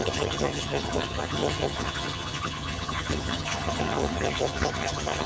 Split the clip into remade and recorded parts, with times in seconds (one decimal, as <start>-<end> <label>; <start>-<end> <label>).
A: 0.0-5.3 remade